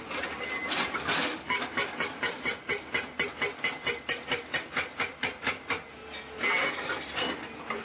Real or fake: real